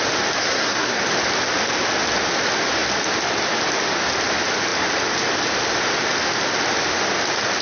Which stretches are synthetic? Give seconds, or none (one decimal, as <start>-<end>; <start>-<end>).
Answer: 0.4-1.0

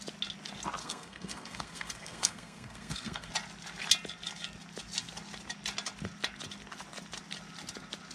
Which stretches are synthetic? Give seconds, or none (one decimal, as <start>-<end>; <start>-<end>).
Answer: 0.8-3.3

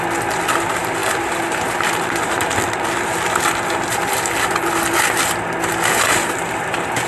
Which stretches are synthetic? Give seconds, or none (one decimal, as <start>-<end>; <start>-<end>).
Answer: none

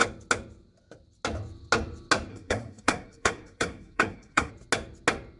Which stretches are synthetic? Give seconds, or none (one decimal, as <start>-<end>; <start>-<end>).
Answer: 2.3-4.5

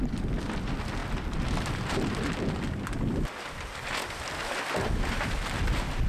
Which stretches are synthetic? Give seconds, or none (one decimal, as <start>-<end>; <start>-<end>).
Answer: none

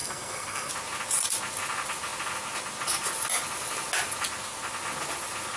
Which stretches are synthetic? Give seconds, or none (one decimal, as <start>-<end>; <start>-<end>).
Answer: 0.0-0.7

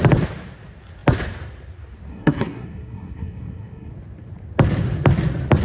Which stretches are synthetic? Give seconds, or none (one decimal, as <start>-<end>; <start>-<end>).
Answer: 2.1-3.9

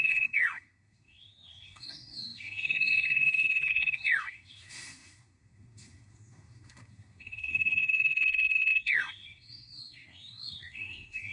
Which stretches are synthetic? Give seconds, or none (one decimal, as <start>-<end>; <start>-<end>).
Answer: 0.0-11.3